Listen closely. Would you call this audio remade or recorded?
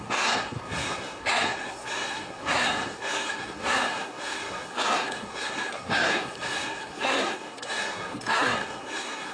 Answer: remade